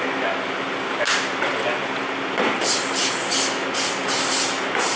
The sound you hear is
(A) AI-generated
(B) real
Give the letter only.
B